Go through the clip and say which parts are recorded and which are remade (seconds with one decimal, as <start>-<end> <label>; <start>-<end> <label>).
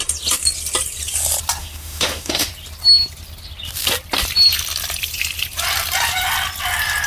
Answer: 0.0-1.6 recorded; 1.6-2.5 remade; 2.5-7.1 recorded